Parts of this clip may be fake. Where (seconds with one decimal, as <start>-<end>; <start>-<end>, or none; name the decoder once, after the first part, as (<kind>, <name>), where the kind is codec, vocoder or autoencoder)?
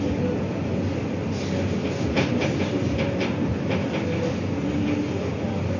none